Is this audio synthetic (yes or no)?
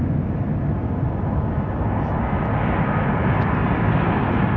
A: no